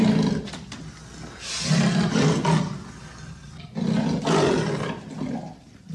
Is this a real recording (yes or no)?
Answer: yes